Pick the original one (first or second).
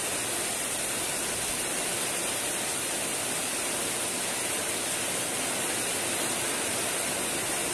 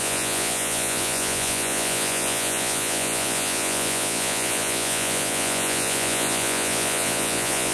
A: first